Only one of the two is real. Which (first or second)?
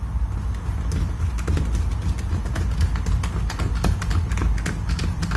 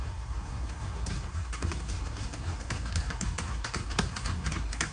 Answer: first